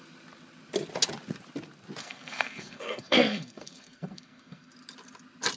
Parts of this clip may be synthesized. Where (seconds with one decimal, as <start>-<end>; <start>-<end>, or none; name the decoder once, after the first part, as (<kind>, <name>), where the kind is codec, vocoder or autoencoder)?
2.0-4.7 (codec, SNAC)